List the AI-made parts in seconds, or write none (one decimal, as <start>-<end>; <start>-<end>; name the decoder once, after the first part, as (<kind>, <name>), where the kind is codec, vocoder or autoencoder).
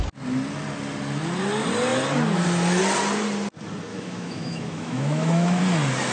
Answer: 3.9-5.6 (autoencoder, DAC-VAE)